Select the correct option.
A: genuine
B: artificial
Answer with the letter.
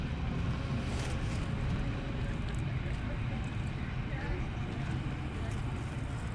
A